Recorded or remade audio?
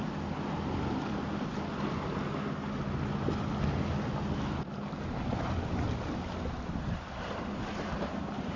recorded